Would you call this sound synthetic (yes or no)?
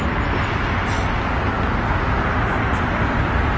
no